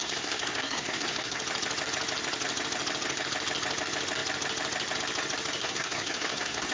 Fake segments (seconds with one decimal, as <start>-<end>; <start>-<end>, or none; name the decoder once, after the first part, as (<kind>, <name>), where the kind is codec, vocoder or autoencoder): 0.0-1.4 (codec, SNAC); 5.6-6.7